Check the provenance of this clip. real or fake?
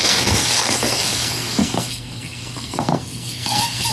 fake